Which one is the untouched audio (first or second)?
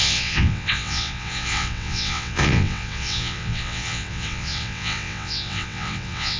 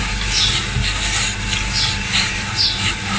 second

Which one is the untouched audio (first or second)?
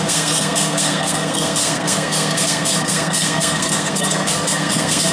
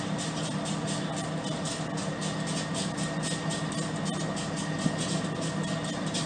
second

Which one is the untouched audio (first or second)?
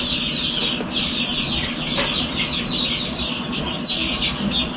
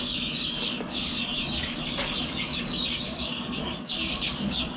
first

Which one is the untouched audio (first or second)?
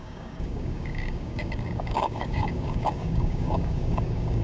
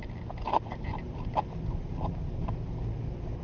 second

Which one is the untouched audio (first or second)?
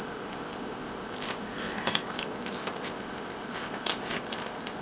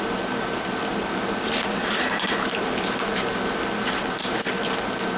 second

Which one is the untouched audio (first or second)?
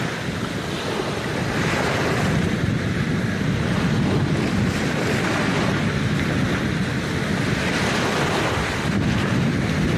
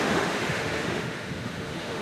first